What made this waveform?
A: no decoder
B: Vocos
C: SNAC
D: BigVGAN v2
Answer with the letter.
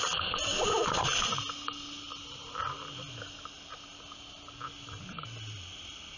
A